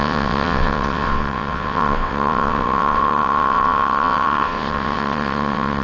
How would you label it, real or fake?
fake